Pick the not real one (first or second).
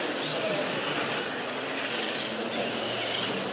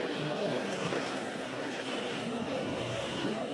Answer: second